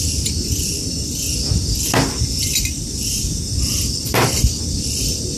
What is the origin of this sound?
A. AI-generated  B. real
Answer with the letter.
A